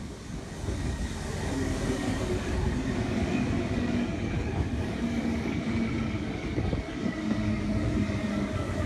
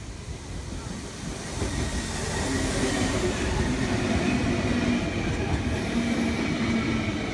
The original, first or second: second